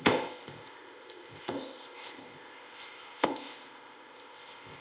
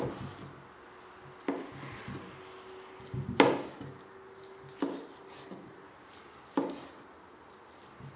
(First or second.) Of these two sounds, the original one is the second